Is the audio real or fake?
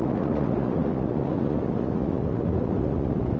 fake